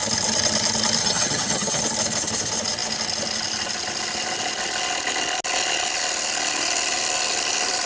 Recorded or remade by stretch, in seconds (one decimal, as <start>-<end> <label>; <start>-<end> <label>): 0.0-1.0 recorded; 1.0-1.8 remade; 1.8-7.9 recorded